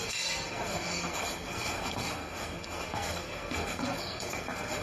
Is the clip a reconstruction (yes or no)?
yes